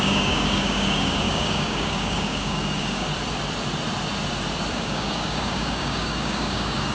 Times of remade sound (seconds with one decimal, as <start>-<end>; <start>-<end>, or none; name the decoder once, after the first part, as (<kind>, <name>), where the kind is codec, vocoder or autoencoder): 0.0-3.1 (codec, DAC); 4.7-6.9